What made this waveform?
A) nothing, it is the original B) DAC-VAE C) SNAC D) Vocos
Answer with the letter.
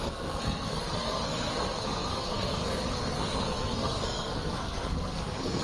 C